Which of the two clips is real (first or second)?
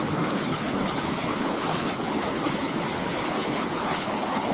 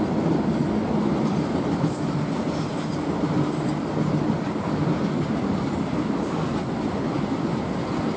second